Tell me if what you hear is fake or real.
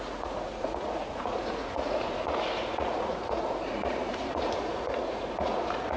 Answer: fake